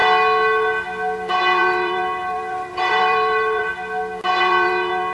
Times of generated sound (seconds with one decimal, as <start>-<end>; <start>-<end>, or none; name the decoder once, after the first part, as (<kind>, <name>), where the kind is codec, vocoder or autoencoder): 1.6-3.7 (vocoder, BigVGAN v2); 4.4-5.1